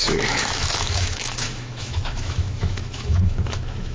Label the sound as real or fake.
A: fake